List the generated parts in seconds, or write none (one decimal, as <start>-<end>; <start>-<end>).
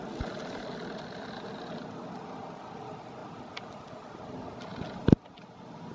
none